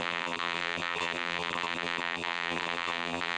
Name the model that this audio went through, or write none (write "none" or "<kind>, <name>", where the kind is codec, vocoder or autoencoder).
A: vocoder, BigVGAN v2